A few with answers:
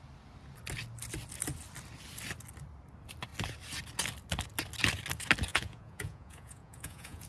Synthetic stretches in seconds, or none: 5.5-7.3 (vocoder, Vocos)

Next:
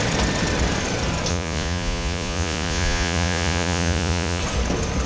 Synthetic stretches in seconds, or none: 1.3-4.4 (vocoder, Vocos)

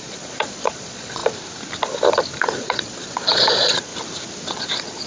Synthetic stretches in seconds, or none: 0.0-1.2 (vocoder, Vocos); 2.4-3.9; 4.5-5.1

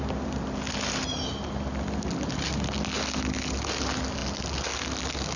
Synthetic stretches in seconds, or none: none

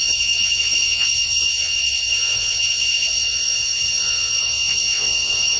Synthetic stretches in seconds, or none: 0.0-5.6 (vocoder, Vocos)

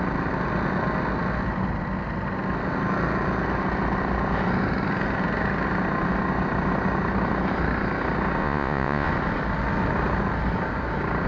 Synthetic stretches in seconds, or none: 8.4-9.1 (vocoder, Vocos)

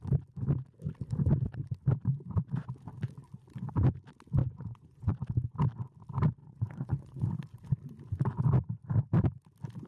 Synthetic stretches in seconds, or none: 4.4-5.1 (vocoder, Vocos); 6.4-7.3

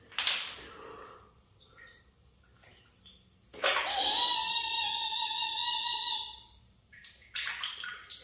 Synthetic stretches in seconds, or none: none